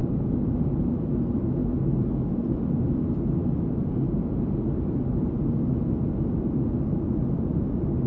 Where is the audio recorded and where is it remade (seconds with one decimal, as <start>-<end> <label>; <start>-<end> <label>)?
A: 0.0-8.1 recorded